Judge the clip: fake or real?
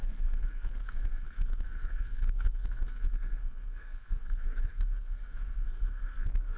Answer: fake